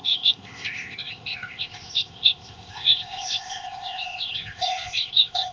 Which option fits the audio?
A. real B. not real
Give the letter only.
B